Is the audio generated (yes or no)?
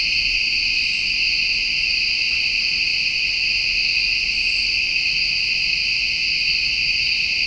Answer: no